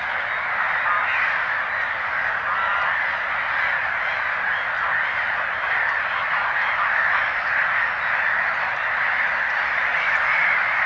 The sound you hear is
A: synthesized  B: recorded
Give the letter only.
B